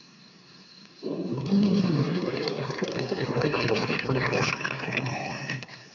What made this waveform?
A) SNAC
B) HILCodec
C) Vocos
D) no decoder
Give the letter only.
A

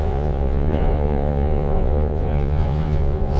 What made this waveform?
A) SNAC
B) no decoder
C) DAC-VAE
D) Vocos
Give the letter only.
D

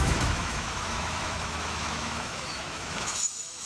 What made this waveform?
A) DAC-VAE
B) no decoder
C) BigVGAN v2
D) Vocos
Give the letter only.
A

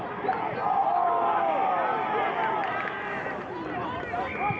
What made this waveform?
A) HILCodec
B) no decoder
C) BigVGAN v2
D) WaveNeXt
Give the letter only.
B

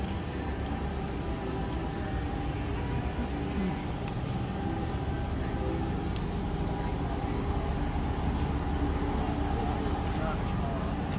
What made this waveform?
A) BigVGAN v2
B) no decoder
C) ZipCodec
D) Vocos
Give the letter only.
B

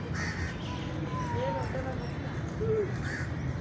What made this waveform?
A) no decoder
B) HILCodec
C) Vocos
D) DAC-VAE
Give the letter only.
A